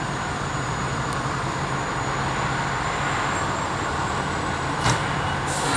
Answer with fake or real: real